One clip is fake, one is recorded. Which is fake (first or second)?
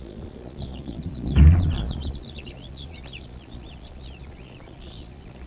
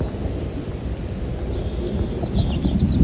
first